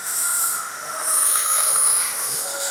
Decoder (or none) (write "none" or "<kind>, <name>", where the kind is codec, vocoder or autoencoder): autoencoder, DAC-VAE